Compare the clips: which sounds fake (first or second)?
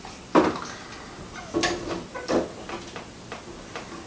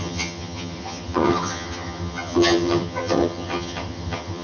second